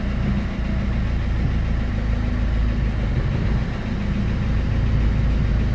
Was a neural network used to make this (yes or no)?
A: no